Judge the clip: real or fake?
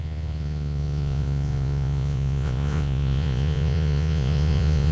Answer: fake